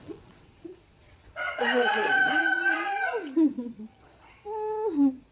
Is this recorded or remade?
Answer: remade